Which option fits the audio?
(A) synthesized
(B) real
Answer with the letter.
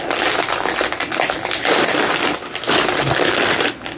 B